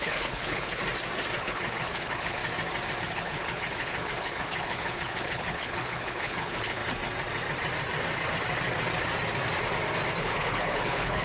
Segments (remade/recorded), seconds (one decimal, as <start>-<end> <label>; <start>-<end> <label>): 0.0-0.8 remade; 0.8-1.4 recorded; 1.4-2.4 remade; 2.4-3.0 recorded; 3.0-6.8 remade; 6.8-10.2 recorded; 10.2-11.2 remade